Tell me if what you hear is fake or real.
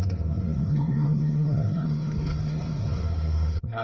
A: fake